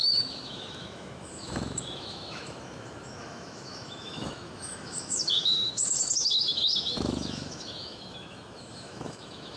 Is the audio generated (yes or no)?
yes